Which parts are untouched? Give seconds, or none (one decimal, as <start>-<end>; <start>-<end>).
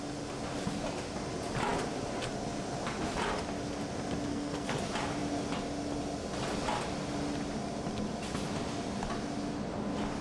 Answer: 0.0-4.3; 4.8-10.2